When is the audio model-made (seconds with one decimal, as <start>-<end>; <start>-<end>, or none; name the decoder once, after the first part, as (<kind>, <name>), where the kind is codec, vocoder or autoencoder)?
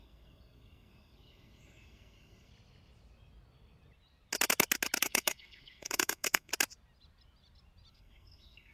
0.0-2.5 (codec, SNAC); 5.0-6.5; 7.9-8.7